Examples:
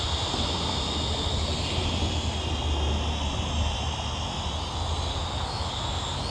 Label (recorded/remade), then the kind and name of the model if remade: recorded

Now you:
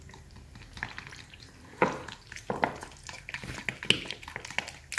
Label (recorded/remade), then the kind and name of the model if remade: recorded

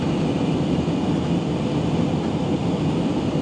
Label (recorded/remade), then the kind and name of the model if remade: recorded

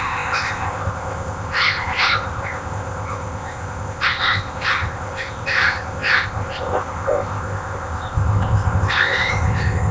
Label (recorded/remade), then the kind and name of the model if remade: remade, codec, ZipCodec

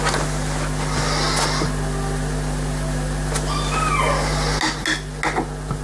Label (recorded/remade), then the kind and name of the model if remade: recorded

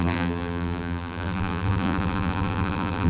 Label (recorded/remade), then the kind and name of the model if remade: remade, vocoder, BigVGAN v2